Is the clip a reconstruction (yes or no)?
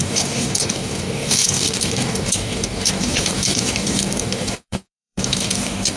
yes